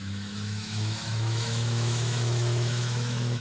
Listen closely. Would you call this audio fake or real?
fake